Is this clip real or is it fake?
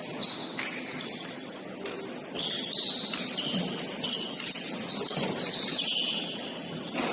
real